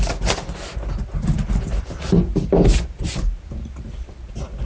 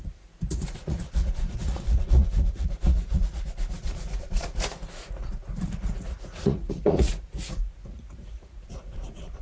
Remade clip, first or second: second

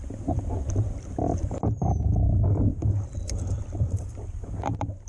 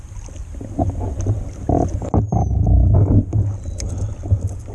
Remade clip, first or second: first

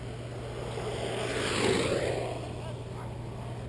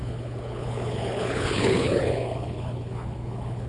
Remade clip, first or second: second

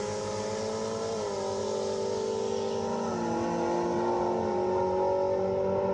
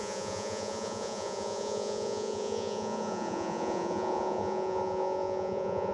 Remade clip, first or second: second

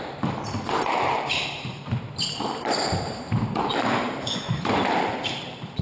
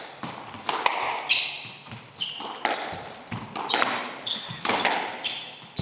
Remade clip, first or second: first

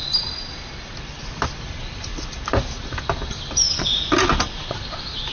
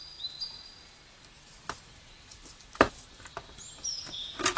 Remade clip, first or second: first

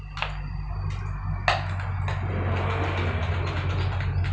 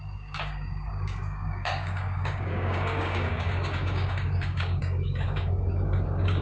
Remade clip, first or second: second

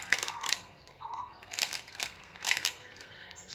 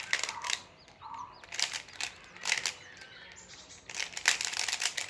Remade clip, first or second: first